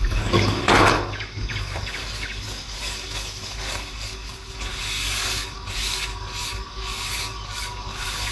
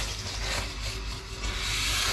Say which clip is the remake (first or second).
first